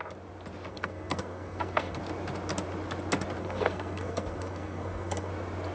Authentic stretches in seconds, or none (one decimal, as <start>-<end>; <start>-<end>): 0.0-0.7; 2.0-3.4; 5.3-5.7